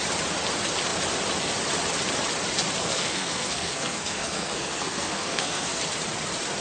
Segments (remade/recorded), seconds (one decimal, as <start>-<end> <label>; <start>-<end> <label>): 0.0-2.8 recorded; 2.8-5.8 remade; 5.8-6.6 recorded